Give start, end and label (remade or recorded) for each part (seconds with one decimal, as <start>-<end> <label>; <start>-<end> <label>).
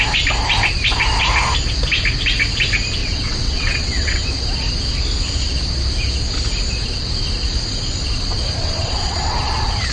0.0-3.0 recorded; 3.0-4.3 remade; 4.3-8.6 recorded; 8.6-9.4 remade; 9.4-9.9 recorded